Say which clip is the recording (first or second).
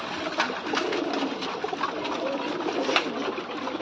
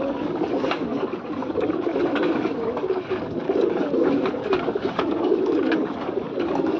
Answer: first